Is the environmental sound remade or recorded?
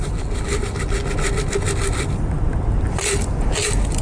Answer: recorded